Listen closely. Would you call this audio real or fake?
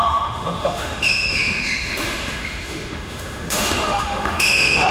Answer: fake